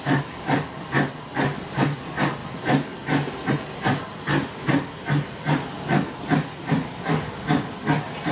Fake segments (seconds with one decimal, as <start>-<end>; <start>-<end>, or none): none